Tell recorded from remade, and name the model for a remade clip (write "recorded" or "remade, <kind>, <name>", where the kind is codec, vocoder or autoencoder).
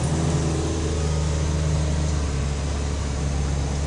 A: recorded